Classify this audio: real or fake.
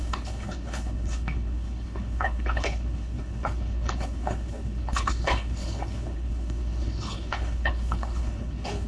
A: fake